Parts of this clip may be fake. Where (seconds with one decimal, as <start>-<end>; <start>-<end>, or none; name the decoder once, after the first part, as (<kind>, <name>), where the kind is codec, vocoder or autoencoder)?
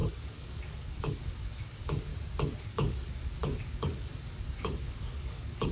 0.0-2.1 (codec, DAC); 2.6-5.7